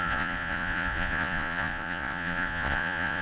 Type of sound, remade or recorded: remade